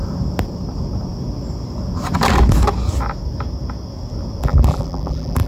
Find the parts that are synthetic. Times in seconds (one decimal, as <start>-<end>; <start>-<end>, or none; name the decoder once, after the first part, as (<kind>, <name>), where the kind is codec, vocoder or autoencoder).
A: 4.4-5.5 (vocoder, BigVGAN v2)